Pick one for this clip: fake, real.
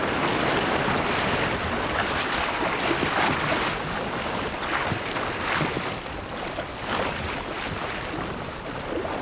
real